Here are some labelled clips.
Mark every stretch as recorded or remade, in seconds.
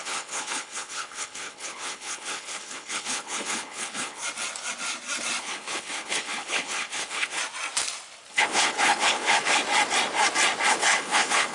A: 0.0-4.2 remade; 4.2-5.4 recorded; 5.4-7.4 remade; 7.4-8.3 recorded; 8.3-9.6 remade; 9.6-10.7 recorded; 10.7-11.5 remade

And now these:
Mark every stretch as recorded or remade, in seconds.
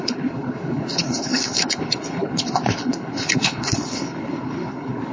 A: 0.0-5.1 remade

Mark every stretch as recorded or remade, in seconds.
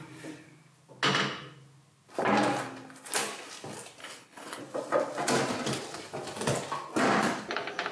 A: 0.0-4.0 recorded; 4.0-4.6 remade; 4.6-7.9 recorded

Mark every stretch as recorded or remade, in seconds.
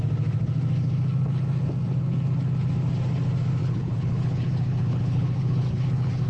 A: 0.0-3.6 recorded; 3.6-6.3 remade